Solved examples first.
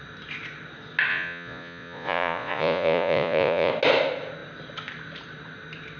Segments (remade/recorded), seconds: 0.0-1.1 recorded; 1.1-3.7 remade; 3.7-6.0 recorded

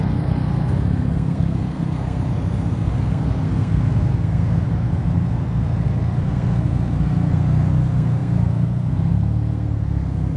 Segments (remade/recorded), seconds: 0.0-10.4 remade

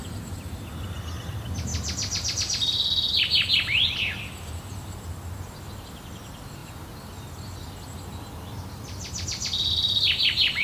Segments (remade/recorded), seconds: 0.0-10.6 recorded